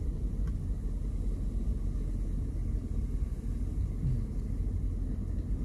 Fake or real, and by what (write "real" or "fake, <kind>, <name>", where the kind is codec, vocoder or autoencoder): real